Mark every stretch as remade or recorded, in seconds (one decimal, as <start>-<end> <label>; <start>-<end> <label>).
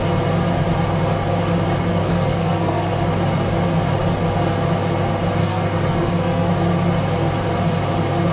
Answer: 0.0-2.0 recorded; 2.0-2.9 remade; 2.9-5.4 recorded; 5.4-6.5 remade; 6.5-8.3 recorded